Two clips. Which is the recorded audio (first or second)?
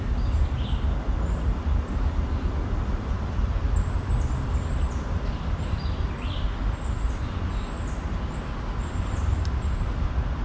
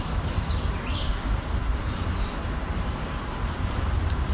first